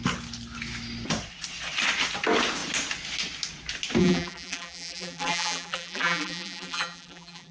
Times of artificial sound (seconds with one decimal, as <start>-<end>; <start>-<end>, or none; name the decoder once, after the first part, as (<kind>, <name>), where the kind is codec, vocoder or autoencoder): 4.0-7.5 (vocoder, BigVGAN v2)